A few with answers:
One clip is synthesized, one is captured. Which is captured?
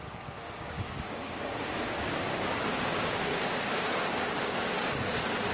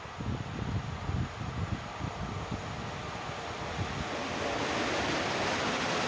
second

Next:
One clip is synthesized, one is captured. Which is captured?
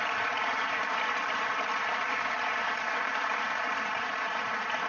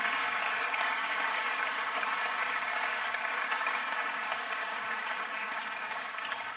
first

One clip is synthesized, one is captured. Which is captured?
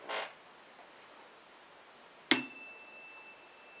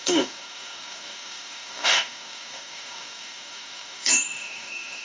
first